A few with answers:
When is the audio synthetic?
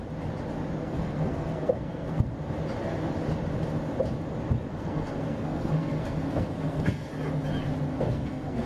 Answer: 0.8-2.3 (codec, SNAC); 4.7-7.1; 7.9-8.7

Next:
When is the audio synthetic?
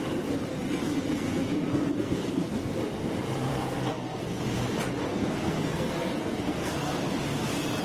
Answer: 0.5-2.8 (codec, SNAC); 3.5-4.4; 5.1-7.0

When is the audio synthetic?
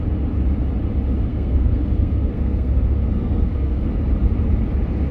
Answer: 1.3-3.9 (codec, SNAC)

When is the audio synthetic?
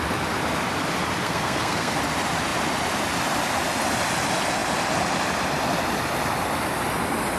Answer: 1.2-2.0 (codec, SNAC)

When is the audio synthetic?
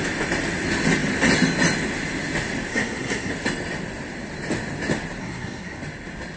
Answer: 2.7-3.3 (codec, SNAC); 5.2-5.8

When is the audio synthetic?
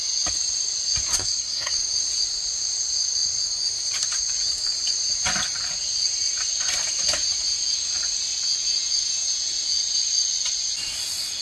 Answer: 1.1-1.7 (codec, SNAC)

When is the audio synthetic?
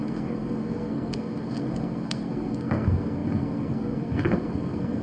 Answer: 0.0-5.0 (codec, SNAC)